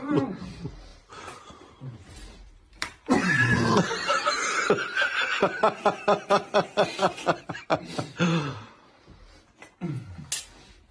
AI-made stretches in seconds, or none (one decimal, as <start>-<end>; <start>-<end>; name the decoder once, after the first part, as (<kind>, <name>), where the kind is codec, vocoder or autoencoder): 0.9-4.3 (vocoder, BigVGAN v2); 7.0-9.5